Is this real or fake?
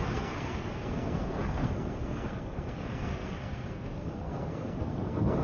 fake